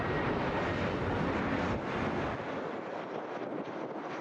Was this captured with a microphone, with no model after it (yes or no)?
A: no